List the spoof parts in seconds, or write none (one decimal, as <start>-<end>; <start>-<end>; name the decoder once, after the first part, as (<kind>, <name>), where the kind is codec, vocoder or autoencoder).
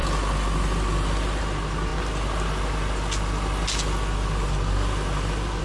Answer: none